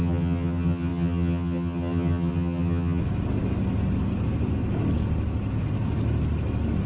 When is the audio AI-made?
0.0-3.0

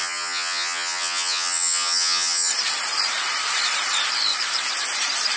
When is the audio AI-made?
0.0-2.5

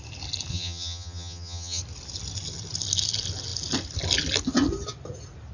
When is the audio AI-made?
0.5-1.8